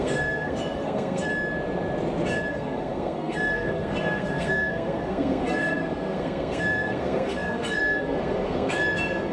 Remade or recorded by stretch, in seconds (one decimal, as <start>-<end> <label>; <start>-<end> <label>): 0.0-1.3 remade; 1.3-2.5 recorded; 2.5-9.3 remade

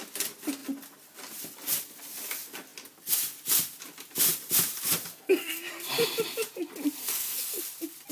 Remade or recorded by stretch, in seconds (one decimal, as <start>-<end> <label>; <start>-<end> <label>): 0.0-5.1 recorded; 5.1-5.6 remade; 5.6-7.0 recorded; 7.0-7.6 remade; 7.6-8.1 recorded

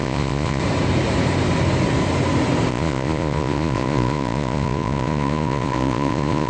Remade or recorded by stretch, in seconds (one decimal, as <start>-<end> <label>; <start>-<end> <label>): 0.0-0.6 remade; 0.6-2.7 recorded; 2.7-6.5 remade

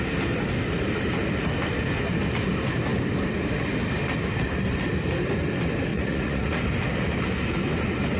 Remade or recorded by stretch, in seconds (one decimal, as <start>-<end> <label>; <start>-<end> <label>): 0.0-5.9 recorded; 5.9-6.6 remade; 6.6-8.2 recorded

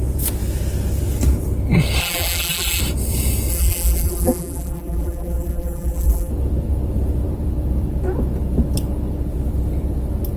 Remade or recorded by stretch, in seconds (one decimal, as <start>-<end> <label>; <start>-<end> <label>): 0.0-2.0 recorded; 2.0-2.8 remade; 2.8-3.5 recorded; 3.5-6.3 remade; 6.3-10.4 recorded

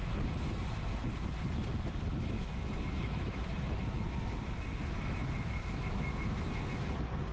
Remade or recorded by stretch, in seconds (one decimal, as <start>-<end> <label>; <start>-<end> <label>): 0.0-2.1 recorded; 2.1-3.5 remade; 3.5-4.7 recorded; 4.7-6.4 remade; 6.4-7.3 recorded

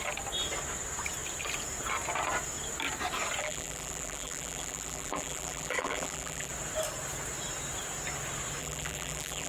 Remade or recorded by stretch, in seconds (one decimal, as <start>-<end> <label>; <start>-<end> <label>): 0.0-3.4 recorded; 3.4-6.5 remade; 6.5-8.6 recorded; 8.6-9.5 remade

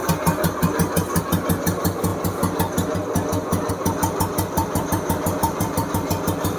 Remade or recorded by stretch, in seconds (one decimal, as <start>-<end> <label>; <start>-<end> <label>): 0.0-4.6 recorded; 4.6-6.1 remade; 6.1-6.6 recorded